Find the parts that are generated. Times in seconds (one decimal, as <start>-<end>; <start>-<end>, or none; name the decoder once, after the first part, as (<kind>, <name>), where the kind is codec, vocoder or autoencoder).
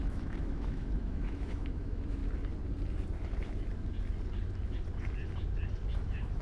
0.0-2.2 (autoencoder, DAC-VAE); 6.0-6.4